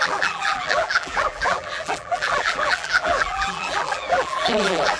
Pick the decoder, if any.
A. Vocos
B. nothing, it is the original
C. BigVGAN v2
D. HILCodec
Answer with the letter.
C